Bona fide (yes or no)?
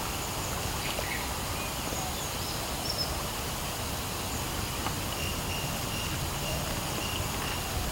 yes